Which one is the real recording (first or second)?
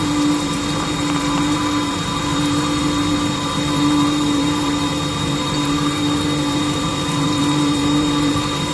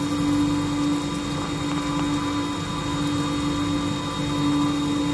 second